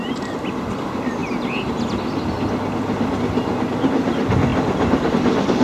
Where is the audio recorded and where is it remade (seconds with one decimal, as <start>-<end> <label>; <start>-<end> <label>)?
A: 0.0-5.6 recorded